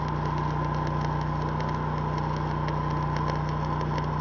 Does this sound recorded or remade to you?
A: recorded